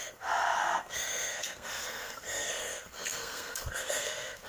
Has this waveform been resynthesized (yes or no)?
yes